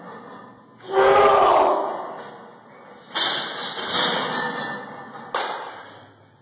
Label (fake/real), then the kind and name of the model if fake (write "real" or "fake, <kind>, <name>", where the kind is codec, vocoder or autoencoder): real